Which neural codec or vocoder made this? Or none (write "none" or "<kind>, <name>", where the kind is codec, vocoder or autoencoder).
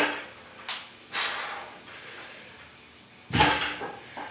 none